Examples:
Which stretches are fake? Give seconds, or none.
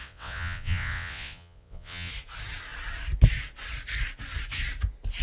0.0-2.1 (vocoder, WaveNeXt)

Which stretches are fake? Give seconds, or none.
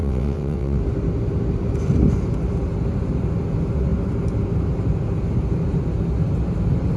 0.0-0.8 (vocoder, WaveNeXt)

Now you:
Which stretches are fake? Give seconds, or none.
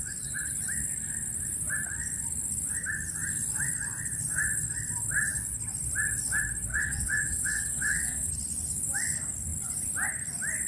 6.7-8.3 (vocoder, WaveNeXt)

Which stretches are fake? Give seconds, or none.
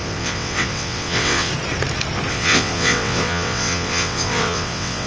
0.0-1.5 (vocoder, WaveNeXt); 2.3-5.1